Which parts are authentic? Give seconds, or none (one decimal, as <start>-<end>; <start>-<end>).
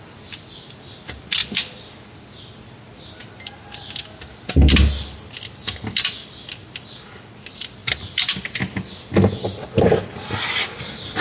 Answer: 0.0-11.2